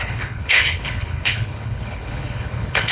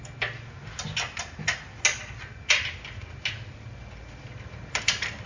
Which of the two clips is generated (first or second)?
first